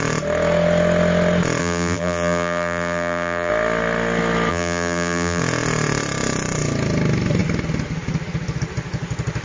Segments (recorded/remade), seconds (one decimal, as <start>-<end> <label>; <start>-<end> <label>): 0.0-1.6 recorded; 1.6-3.5 remade; 3.5-4.5 recorded; 4.5-5.4 remade; 5.4-9.4 recorded